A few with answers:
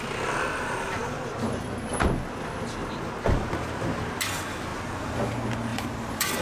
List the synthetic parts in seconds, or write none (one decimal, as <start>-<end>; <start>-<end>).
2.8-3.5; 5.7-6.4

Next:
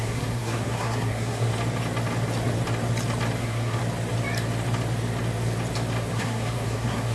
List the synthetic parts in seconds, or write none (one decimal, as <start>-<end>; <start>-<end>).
0.0-1.5; 3.4-3.8; 6.1-7.1

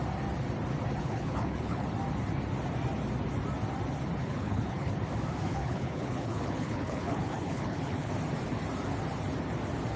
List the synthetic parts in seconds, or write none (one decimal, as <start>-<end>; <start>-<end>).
1.0-1.9; 4.2-4.9; 5.5-8.1

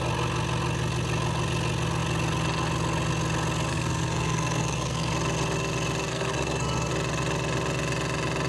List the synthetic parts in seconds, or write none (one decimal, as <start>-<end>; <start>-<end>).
3.7-5.1; 6.1-6.9

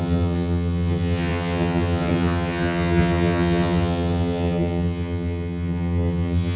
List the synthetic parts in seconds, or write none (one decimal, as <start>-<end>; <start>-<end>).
0.0-6.6

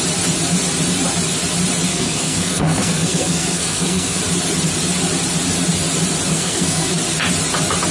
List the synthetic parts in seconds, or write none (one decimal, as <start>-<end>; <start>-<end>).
1.9-4.2; 6.3-7.0

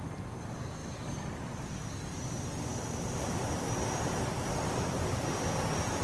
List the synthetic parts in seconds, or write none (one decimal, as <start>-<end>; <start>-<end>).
2.7-5.6